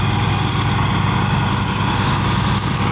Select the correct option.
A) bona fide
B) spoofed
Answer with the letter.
A